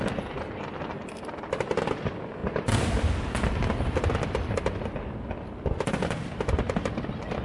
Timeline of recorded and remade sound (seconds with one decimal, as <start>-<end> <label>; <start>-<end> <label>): 0.0-2.4 recorded; 2.4-4.5 remade; 4.5-7.4 recorded